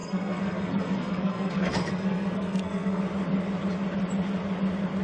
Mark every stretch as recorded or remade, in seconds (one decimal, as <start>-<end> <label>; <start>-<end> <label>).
0.0-3.0 remade; 3.0-5.0 recorded